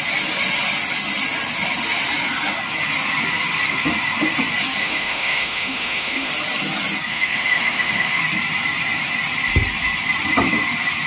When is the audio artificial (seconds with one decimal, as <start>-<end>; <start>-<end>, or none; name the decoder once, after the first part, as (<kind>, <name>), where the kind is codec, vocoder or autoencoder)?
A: 4.8-6.3 (autoencoder, DAC-VAE); 7.1-8.2